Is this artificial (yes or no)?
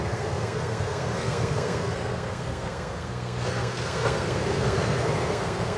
yes